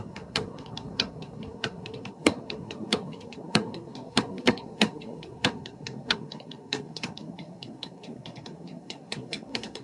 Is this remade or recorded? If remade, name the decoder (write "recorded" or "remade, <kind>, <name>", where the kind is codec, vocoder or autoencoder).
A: remade, codec, SNAC